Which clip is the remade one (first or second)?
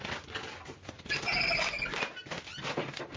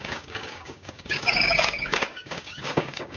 second